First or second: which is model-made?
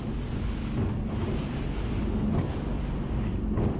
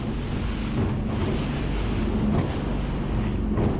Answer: first